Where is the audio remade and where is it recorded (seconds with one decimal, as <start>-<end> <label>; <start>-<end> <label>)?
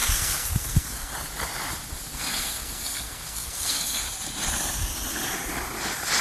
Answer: 0.0-1.1 remade; 1.1-2.1 recorded; 2.1-4.0 remade; 4.0-6.2 recorded